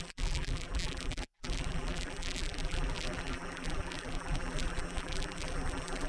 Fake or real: fake